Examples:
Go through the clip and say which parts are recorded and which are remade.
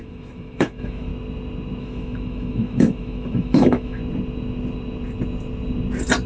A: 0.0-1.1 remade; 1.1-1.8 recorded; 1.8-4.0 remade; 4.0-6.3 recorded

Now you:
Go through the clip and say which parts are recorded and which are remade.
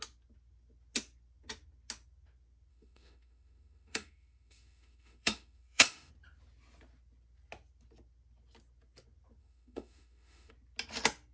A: 0.0-2.7 recorded; 2.7-6.1 remade; 6.1-9.4 recorded; 9.4-10.5 remade; 10.5-11.3 recorded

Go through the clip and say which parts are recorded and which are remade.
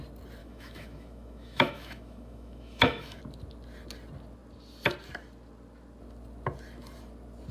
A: 0.0-0.4 recorded; 0.4-3.2 remade; 3.2-7.5 recorded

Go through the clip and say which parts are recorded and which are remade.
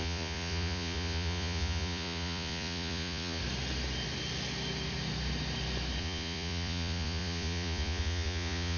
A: 0.0-3.4 remade; 3.4-6.0 recorded; 6.0-8.8 remade